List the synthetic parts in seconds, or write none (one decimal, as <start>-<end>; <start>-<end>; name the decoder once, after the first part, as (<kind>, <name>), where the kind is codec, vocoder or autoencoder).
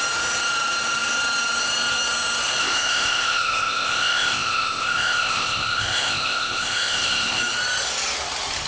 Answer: 2.6-7.4 (codec, ZipCodec)